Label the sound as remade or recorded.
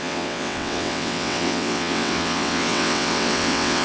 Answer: remade